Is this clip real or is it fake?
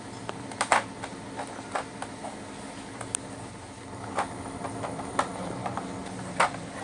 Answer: real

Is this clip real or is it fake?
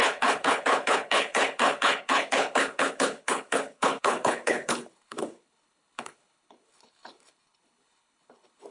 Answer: fake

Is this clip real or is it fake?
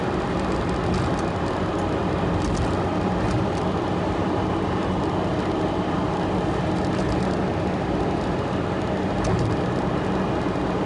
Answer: real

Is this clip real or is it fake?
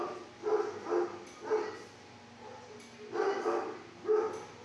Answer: real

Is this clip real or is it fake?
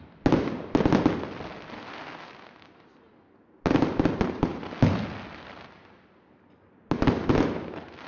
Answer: real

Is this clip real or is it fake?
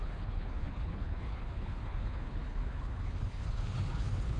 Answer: fake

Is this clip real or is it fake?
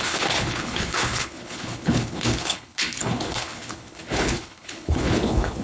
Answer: fake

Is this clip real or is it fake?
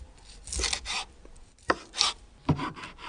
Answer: real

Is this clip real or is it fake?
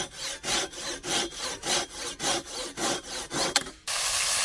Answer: real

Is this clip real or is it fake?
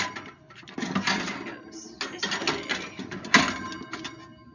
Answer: real